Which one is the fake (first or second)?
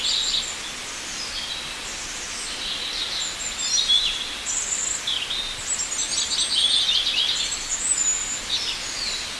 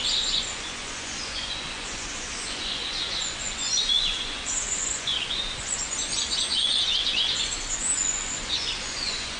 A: second